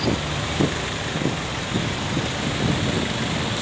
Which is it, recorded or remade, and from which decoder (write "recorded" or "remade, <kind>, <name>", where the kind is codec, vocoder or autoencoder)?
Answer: recorded